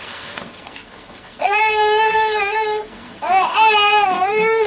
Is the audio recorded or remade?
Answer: remade